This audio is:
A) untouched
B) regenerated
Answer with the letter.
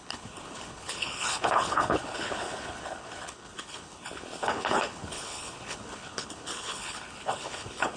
B